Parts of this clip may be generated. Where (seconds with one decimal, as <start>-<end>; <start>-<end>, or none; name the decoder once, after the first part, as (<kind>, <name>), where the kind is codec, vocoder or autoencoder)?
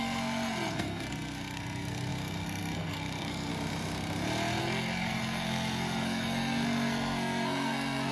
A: 0.0-3.5 (codec, SNAC); 4.6-8.1